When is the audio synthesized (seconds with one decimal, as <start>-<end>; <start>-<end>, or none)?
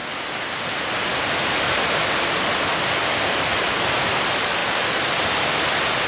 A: 4.6-5.6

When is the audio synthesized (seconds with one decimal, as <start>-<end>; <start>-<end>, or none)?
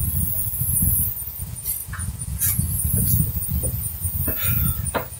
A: 0.0-5.2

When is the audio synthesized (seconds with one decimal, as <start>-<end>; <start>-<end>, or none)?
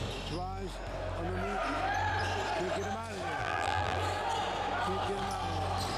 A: 3.4-4.0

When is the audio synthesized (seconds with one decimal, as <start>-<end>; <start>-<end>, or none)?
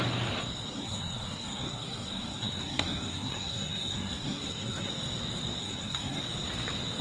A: 0.7-4.9; 5.6-6.2